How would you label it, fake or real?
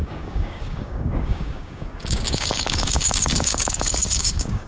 fake